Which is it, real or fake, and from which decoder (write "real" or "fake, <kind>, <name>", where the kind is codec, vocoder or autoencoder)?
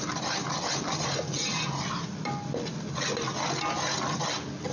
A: real